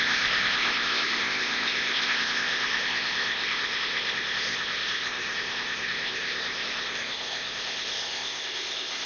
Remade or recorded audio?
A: remade